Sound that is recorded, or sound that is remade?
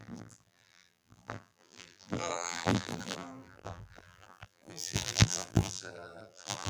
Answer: remade